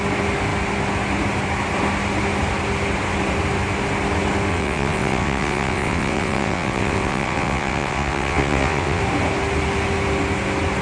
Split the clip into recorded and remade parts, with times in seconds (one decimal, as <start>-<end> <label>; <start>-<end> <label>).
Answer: 0.0-4.5 recorded; 4.5-9.0 remade; 9.0-10.8 recorded